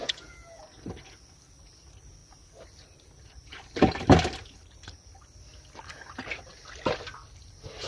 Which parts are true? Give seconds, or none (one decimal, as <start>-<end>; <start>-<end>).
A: 0.6-7.9

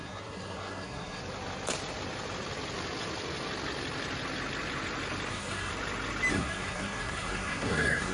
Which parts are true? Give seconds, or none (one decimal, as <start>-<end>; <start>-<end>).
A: 1.2-5.3; 5.7-6.3

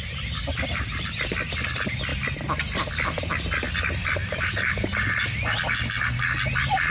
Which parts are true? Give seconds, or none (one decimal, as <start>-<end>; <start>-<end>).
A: 0.0-0.5; 1.2-4.2; 5.2-6.9

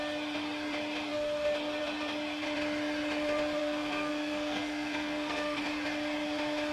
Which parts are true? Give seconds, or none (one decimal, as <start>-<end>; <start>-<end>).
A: 0.0-3.6; 5.6-6.7

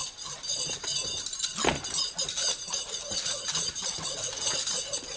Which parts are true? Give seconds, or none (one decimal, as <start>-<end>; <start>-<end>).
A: 0.0-5.2

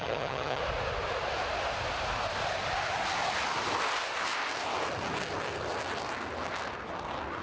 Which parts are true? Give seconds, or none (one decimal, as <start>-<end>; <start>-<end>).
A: 0.6-7.4

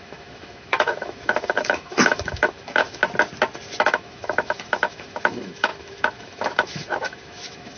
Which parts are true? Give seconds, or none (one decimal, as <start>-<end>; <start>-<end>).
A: 3.0-3.8